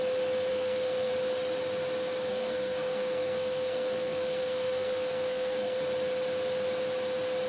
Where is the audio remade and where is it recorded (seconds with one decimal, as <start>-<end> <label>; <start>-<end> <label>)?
0.0-0.5 recorded; 0.5-1.1 remade; 1.1-2.3 recorded; 2.3-5.8 remade; 5.8-7.5 recorded